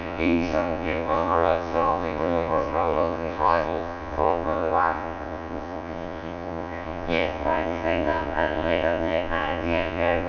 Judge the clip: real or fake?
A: fake